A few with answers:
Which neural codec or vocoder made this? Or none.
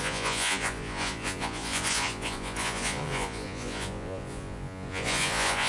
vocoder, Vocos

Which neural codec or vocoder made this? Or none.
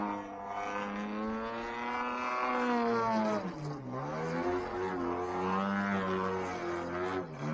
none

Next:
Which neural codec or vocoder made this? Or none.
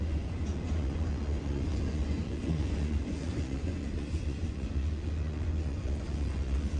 vocoder, Vocos